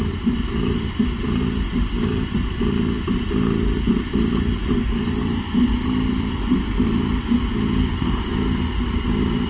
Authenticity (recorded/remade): recorded